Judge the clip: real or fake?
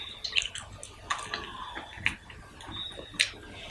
real